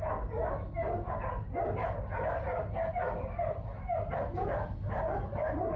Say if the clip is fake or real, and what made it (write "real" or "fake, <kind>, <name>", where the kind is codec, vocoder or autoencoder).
real